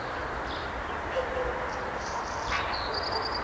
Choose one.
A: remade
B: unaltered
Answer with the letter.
B